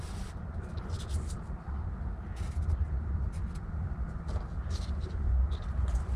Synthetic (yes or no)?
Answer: no